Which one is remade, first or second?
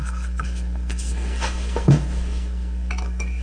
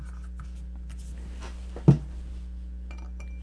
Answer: first